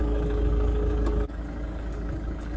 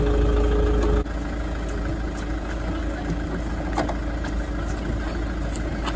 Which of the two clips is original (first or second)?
second